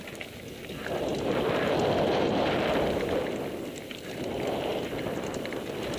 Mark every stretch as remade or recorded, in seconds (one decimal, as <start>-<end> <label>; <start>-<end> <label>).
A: 0.0-6.0 recorded